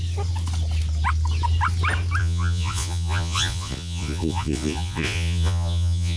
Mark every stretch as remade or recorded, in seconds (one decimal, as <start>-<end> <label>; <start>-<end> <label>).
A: 0.0-2.2 recorded; 2.2-6.2 remade